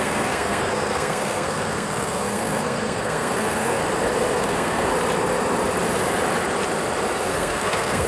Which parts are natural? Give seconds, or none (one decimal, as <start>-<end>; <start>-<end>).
3.8-4.3; 4.9-7.2

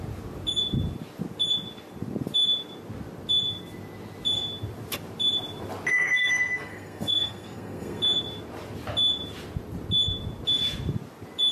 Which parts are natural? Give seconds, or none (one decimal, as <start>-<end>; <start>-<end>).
0.0-5.9; 8.0-11.5

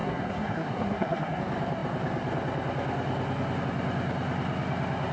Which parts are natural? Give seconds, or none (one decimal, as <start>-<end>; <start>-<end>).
1.4-5.1

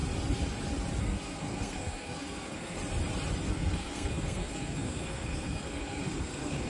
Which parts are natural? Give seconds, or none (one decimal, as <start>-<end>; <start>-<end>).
0.0-1.0; 2.8-3.5

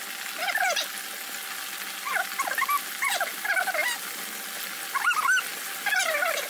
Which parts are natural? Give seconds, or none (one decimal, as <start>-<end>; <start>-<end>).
0.0-6.5